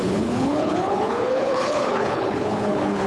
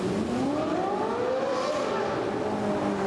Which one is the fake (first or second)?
first